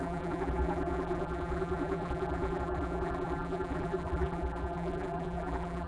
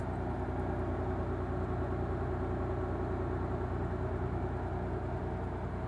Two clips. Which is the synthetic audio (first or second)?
first